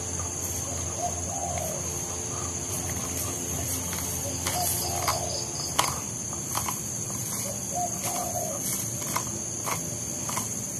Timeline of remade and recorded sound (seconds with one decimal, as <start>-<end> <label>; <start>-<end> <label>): 0.0-10.8 recorded